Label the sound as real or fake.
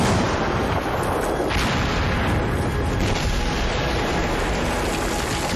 real